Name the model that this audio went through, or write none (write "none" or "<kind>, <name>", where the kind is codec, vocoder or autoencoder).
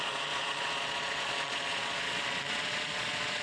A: vocoder, Vocos